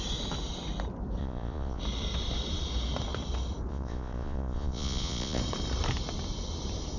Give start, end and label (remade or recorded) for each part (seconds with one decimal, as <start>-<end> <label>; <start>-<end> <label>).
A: 0.0-1.2 recorded; 1.2-1.8 remade; 1.8-3.7 recorded; 3.7-5.4 remade; 5.4-7.0 recorded

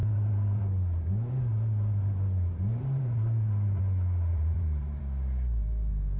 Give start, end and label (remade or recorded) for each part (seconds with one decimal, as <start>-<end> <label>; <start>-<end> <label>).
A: 0.0-0.6 remade; 0.6-2.7 recorded; 2.7-3.8 remade; 3.8-4.3 recorded; 4.3-5.0 remade; 5.0-6.2 recorded

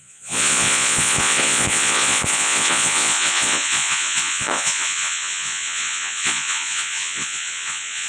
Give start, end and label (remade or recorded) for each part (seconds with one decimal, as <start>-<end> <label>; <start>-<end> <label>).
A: 0.0-8.1 remade

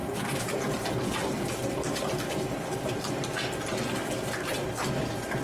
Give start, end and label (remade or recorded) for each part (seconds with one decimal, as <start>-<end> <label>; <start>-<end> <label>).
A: 0.0-3.1 remade; 3.1-4.0 recorded; 4.0-4.8 remade; 4.8-5.4 recorded

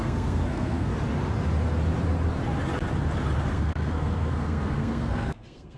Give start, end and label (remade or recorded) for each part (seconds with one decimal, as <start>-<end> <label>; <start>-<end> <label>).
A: 0.0-0.9 remade; 0.9-3.5 recorded; 3.5-5.8 remade

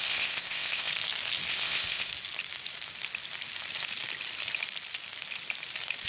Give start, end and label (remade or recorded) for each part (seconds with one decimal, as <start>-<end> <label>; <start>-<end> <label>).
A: 0.0-0.9 remade; 0.9-1.5 recorded; 1.5-2.1 remade; 2.1-6.1 recorded

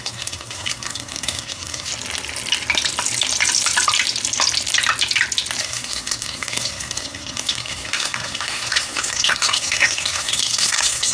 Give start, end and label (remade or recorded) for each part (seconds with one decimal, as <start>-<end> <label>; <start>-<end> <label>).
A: 0.0-1.9 remade; 1.9-5.6 recorded; 5.6-11.1 remade

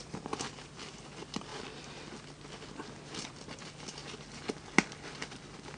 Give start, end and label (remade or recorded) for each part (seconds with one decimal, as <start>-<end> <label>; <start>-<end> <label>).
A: 0.0-5.8 recorded